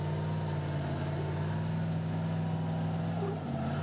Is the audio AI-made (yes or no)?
no